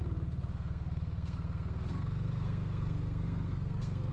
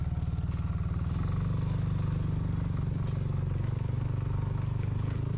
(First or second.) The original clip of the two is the second